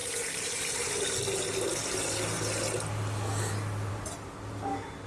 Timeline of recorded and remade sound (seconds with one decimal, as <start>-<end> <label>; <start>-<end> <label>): 0.0-0.9 remade; 0.9-5.1 recorded